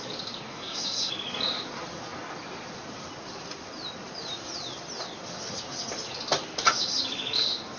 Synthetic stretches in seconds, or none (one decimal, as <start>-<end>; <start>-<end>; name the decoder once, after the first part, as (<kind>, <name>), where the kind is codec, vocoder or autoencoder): 0.5-1.1 (codec, SNAC)